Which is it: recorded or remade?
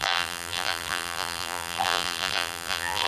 remade